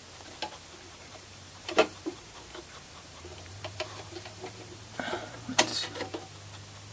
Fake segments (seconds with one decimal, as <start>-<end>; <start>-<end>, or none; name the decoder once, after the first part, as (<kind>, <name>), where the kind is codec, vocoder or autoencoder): 0.9-5.7 (vocoder, BigVGAN v2)